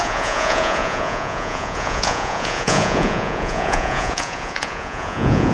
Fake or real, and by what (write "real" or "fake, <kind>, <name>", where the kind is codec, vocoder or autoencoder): fake, vocoder, Vocos